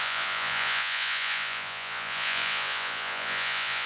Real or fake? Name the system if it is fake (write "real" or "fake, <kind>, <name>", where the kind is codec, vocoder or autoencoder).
fake, vocoder, Vocos